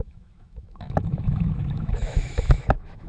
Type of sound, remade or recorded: remade